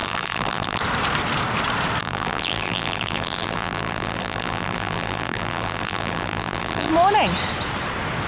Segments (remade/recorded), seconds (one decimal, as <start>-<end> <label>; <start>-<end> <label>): 0.0-0.8 remade; 0.8-2.0 recorded; 2.0-6.9 remade; 6.9-8.3 recorded